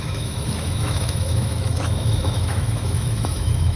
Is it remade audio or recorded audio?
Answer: remade